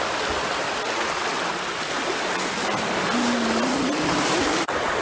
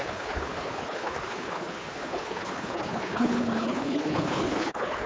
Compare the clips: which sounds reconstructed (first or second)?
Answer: second